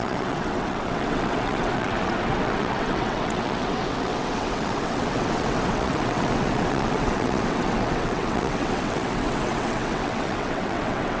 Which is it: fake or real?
fake